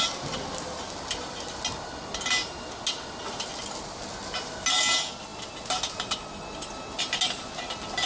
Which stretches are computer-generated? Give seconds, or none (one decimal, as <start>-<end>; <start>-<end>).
none